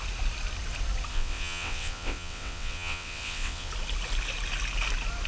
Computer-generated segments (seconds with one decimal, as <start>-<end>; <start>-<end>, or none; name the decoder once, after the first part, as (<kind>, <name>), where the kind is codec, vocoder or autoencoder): 1.1-3.7 (vocoder, WaveNeXt)